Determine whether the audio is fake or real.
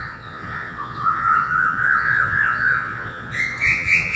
fake